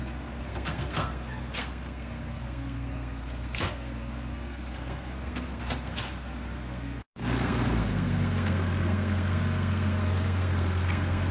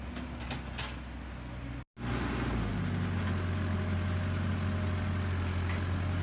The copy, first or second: first